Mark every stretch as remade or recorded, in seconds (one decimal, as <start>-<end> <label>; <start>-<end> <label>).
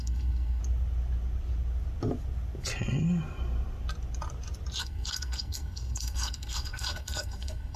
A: 0.0-0.6 remade; 0.6-4.8 recorded; 4.8-7.8 remade